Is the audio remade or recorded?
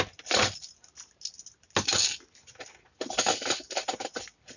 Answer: recorded